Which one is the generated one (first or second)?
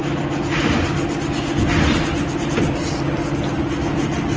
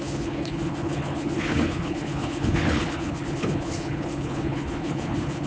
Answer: second